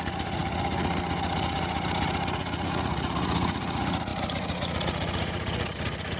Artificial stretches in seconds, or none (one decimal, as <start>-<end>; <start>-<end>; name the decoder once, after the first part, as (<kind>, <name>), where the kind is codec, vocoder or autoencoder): 0.0-6.2 (vocoder, Vocos)